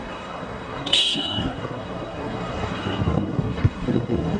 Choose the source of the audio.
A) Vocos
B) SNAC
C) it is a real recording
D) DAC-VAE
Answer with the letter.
B